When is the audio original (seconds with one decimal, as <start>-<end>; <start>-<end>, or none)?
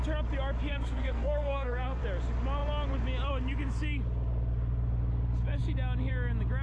0.0-0.7; 2.0-6.6